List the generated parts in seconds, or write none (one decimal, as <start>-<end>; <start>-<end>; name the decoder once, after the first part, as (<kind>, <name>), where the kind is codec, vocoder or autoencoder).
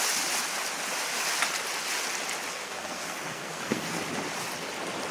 2.5-4.0 (codec, SNAC)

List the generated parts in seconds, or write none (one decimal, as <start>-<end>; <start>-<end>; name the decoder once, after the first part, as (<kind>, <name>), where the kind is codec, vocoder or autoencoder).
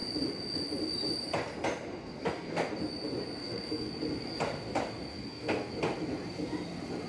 2.0-2.7 (codec, SNAC); 3.4-3.9; 5.1-5.7